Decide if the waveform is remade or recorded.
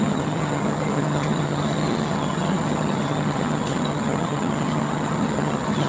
remade